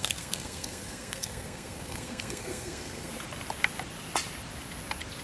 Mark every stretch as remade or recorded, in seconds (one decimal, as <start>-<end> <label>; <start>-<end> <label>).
0.0-3.1 remade; 3.1-5.2 recorded